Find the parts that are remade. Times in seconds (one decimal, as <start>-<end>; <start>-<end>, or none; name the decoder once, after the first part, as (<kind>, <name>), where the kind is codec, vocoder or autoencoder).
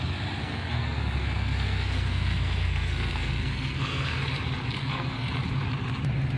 0.4-4.2 (codec, SNAC); 4.8-5.3